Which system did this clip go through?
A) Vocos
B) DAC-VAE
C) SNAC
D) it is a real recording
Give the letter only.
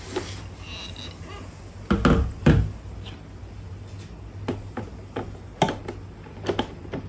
D